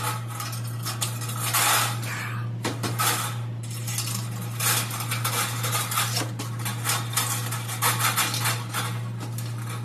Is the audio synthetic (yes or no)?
no